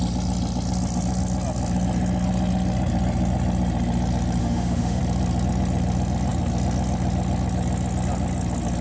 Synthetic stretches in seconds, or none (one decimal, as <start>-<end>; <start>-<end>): 4.4-5.0